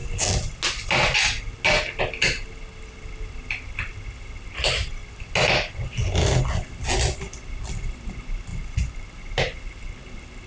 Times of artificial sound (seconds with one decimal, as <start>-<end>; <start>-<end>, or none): none